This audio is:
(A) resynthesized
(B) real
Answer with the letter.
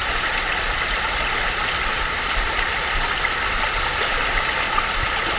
A